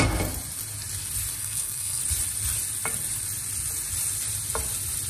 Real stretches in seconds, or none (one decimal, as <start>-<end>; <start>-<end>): 0.0-1.4; 2.0-5.1